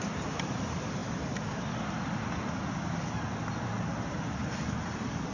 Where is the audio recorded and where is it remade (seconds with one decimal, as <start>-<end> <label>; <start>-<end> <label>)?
0.0-5.3 recorded